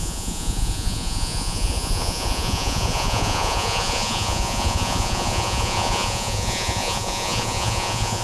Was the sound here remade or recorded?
remade